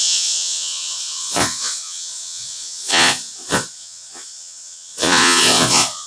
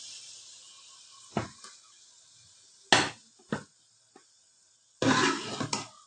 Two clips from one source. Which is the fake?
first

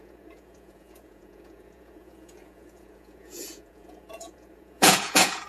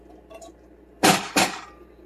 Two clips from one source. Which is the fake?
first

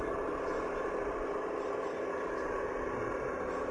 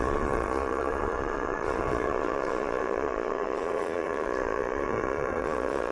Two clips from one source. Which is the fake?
second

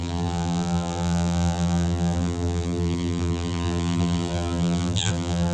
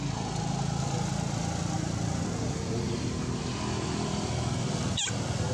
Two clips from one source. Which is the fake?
first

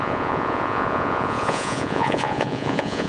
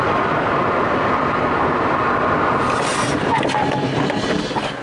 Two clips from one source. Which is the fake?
first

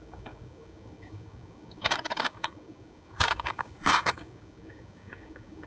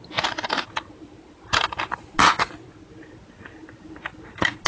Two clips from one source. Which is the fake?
first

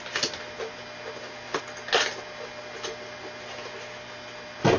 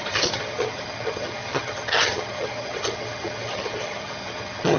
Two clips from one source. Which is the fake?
second